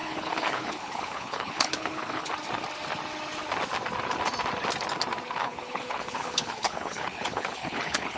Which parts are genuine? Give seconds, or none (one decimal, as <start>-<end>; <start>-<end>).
2.3-5.4